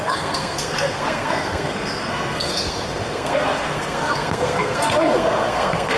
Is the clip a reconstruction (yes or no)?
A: yes